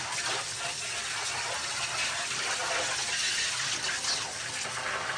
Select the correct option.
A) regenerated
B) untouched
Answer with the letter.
B